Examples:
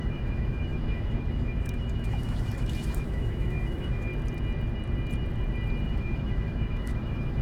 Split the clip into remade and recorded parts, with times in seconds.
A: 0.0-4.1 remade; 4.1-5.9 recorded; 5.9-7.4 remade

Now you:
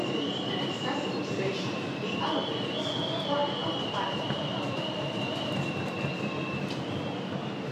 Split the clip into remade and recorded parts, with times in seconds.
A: 0.0-2.1 remade; 2.1-7.7 recorded

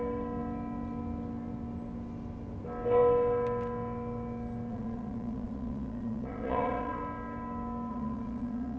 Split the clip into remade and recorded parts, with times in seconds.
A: 0.0-4.7 recorded; 4.7-7.0 remade; 7.0-7.9 recorded; 7.9-8.8 remade

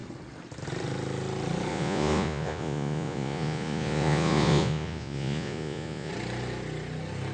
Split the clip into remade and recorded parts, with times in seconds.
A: 0.0-1.7 recorded; 1.7-6.1 remade; 6.1-7.3 recorded

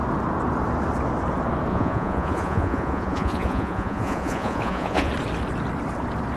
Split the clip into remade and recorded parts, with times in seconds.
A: 0.0-1.7 recorded; 1.7-5.1 remade; 5.1-6.4 recorded